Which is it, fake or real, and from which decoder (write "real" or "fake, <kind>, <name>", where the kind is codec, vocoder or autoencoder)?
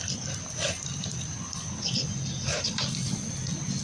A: real